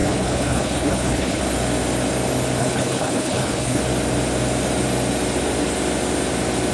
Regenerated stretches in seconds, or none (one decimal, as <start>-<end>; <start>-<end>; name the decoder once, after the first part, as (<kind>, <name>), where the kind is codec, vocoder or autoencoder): 0.0-1.4 (codec, HILCodec); 2.6-3.8